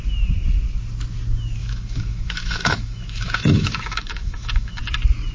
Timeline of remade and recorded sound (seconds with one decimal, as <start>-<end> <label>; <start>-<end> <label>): 0.0-1.6 recorded; 1.6-4.8 remade; 4.8-5.3 recorded

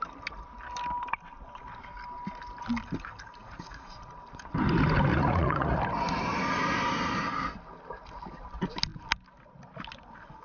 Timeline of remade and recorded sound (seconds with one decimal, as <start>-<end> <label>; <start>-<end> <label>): 0.0-3.4 recorded; 3.4-4.1 remade; 4.1-5.1 recorded; 5.1-5.8 remade; 5.8-10.4 recorded

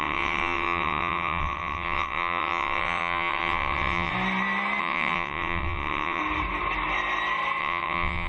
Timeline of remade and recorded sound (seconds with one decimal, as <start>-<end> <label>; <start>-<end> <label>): 0.0-4.1 remade; 4.1-4.8 recorded; 4.8-6.2 remade; 6.2-7.6 recorded; 7.6-8.3 remade